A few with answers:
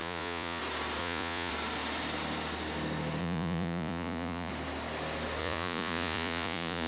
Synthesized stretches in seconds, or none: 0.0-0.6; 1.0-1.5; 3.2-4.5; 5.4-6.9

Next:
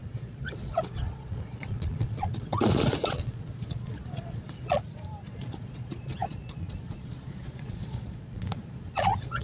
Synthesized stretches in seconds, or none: 0.0-4.8; 5.3-9.4

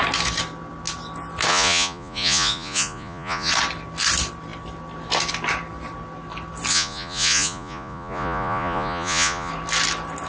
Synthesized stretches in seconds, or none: 1.5-3.5; 6.7-9.5

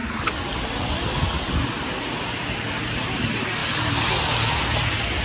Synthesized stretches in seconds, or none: none

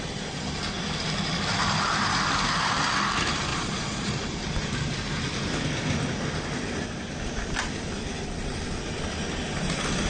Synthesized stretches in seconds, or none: 3.5-4.1

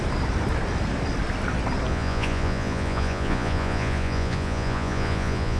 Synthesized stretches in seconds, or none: 1.9-5.6

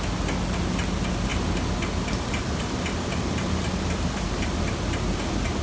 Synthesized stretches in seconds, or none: none